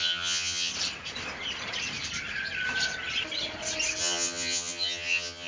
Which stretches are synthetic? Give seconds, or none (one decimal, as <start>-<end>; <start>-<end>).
0.0-0.7; 4.0-5.5